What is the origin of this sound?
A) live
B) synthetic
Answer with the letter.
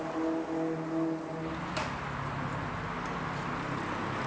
A